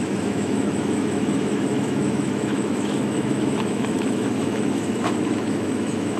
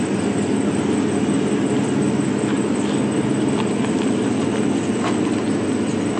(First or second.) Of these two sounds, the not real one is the first